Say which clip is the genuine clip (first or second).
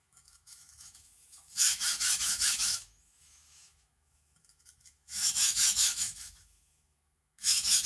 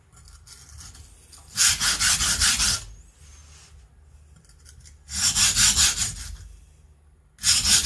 second